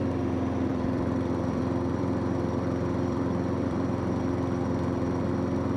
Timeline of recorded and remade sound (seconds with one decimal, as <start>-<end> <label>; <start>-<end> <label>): 0.0-0.7 recorded; 0.7-4.2 remade; 4.2-5.8 recorded